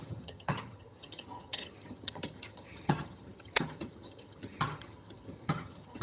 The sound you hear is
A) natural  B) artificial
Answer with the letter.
B